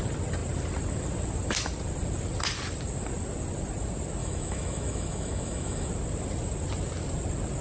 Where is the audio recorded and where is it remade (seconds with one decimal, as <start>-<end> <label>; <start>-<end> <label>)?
0.0-4.2 recorded; 4.2-5.9 remade; 5.9-7.6 recorded